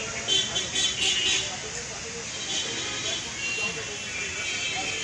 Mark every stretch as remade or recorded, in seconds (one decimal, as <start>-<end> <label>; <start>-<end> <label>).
0.0-5.0 recorded